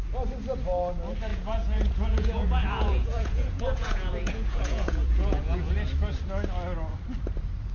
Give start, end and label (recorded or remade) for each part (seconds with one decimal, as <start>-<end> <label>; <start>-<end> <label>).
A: 0.0-1.3 recorded; 1.3-5.7 remade; 5.7-7.7 recorded